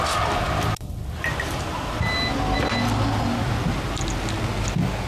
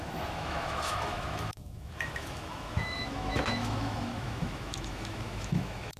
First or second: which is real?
first